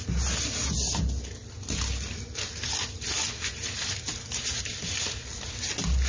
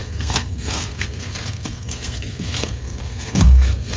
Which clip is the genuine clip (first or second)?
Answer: first